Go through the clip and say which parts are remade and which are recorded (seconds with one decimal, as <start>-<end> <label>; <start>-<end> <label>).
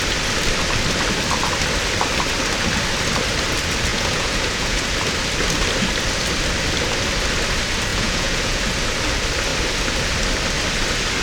0.0-3.9 recorded; 3.9-4.9 remade; 4.9-7.9 recorded; 7.9-8.6 remade; 8.6-11.2 recorded